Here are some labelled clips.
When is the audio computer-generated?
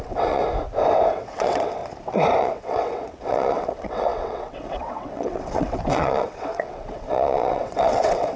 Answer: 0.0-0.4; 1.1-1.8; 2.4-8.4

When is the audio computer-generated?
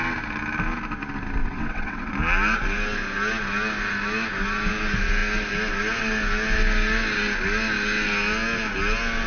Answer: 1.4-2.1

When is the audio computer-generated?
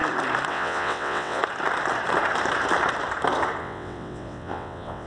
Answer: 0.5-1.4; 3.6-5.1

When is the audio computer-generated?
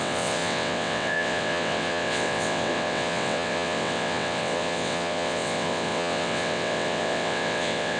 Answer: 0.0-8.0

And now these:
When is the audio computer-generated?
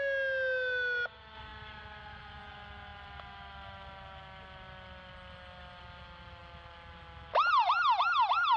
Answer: none